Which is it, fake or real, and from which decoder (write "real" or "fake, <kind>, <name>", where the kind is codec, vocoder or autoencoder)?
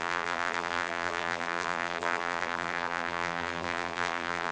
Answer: fake, vocoder, BigVGAN v2